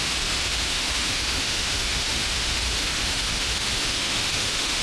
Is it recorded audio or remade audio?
remade